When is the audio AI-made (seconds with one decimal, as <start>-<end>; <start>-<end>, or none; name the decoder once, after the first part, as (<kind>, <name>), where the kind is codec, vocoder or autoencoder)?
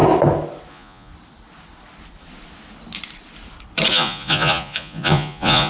0.7-1.1 (vocoder, Vocos); 3.9-5.7